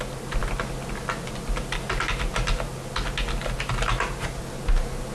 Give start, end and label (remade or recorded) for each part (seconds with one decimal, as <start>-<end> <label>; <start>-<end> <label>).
0.0-5.1 recorded